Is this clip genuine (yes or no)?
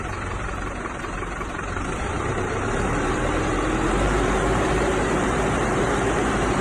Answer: no